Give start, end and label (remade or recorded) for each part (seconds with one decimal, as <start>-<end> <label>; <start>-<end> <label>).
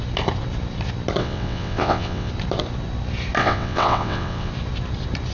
0.0-1.2 recorded; 1.2-2.3 remade; 2.3-3.4 recorded; 3.4-4.5 remade; 4.5-5.3 recorded